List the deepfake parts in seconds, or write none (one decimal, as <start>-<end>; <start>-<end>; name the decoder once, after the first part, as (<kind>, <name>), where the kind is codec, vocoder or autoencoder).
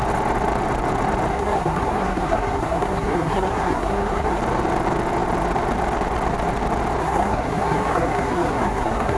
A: 1.3-4.4 (codec, SNAC); 7.0-9.2